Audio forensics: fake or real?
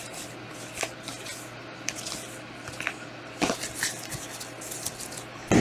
real